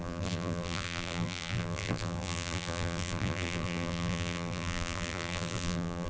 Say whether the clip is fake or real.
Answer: fake